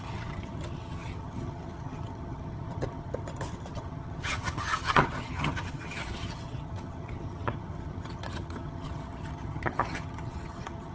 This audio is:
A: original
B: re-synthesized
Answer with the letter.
B